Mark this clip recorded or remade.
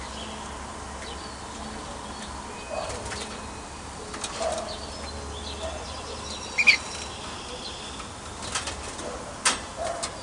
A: recorded